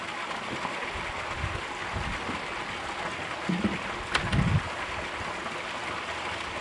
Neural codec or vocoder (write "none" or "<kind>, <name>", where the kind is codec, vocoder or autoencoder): none